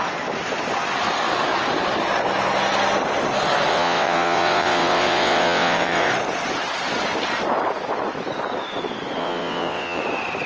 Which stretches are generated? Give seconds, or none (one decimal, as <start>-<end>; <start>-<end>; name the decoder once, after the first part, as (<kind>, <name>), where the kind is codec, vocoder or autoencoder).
3.7-6.1 (vocoder, WaveNeXt); 9.2-10.0